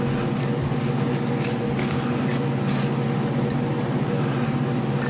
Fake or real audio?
real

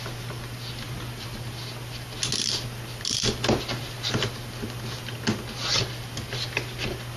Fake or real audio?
real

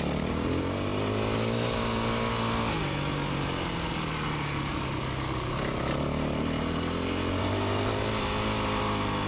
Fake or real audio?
real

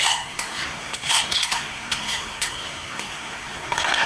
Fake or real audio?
fake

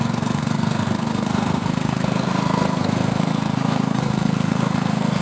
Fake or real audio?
fake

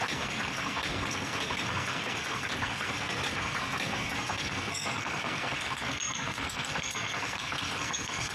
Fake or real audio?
fake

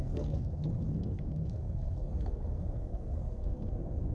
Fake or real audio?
fake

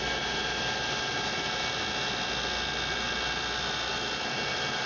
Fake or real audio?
real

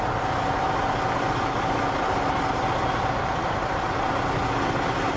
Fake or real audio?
real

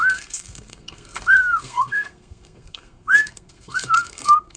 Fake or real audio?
fake